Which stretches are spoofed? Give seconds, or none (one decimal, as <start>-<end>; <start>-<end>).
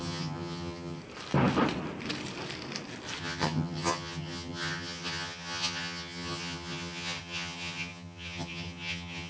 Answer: 0.0-1.0; 3.2-9.3